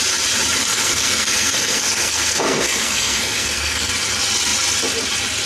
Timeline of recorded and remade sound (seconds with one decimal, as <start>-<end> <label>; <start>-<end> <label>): 0.0-0.6 recorded; 0.6-3.9 remade; 3.9-5.5 recorded